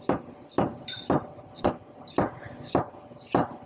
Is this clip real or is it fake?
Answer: fake